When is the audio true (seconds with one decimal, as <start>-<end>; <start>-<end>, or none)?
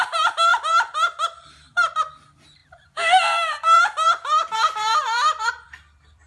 0.5-1.4